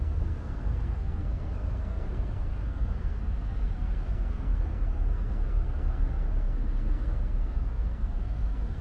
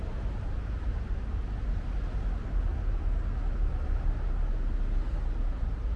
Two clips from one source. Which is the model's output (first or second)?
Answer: first